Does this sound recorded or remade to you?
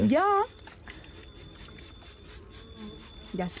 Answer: recorded